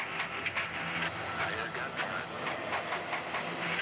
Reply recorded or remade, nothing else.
recorded